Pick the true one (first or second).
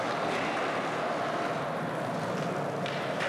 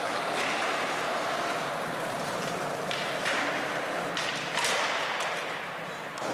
first